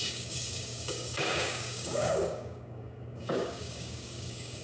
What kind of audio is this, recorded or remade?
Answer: remade